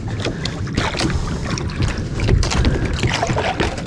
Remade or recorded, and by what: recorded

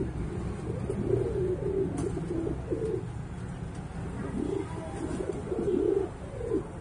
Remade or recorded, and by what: recorded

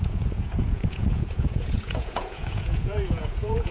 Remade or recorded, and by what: remade, vocoder, Vocos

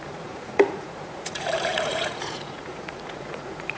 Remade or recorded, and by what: remade, vocoder, Vocos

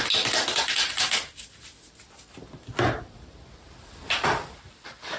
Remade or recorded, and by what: recorded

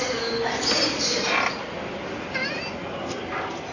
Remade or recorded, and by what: recorded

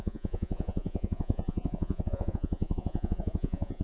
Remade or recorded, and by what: remade, vocoder, Vocos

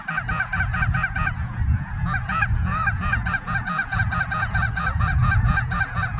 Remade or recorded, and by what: remade, vocoder, Vocos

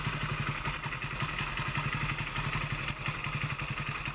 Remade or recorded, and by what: recorded